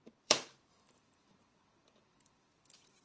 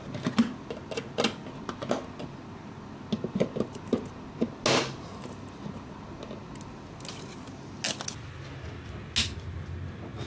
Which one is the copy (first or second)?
first